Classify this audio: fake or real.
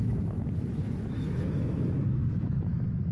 fake